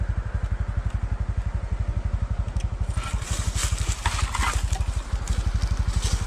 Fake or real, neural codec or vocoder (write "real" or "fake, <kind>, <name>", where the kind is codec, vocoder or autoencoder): real